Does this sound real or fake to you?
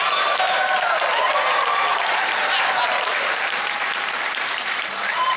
fake